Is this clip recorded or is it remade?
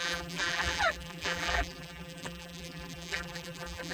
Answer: remade